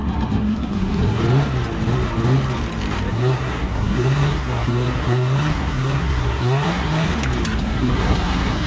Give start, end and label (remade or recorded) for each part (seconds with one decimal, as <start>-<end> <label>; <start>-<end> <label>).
0.0-1.2 remade; 1.2-3.1 recorded; 3.1-7.1 remade; 7.1-7.6 recorded; 7.6-8.7 remade